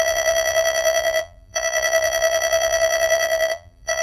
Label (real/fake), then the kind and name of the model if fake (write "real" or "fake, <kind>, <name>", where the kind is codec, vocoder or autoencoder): fake, vocoder, BigVGAN v2